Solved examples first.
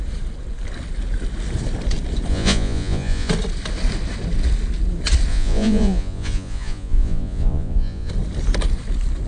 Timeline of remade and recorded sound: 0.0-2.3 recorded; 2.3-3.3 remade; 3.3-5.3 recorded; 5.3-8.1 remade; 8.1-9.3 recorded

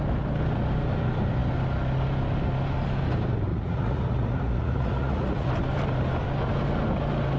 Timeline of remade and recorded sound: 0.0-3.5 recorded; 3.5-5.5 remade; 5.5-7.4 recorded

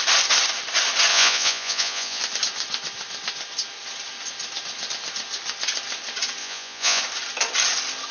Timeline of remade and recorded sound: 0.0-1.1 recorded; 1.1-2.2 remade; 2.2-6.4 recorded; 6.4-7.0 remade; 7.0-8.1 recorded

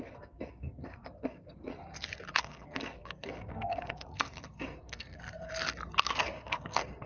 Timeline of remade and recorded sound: 0.0-1.7 remade; 1.7-2.4 recorded; 2.4-5.5 remade; 5.5-6.2 recorded; 6.2-7.1 remade

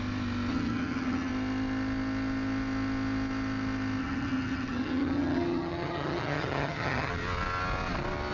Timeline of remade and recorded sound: 0.0-0.5 recorded; 0.5-1.3 remade; 1.3-4.0 recorded; 4.0-7.1 remade; 7.1-8.3 recorded